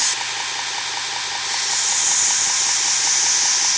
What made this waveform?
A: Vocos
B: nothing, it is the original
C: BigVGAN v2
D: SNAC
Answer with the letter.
B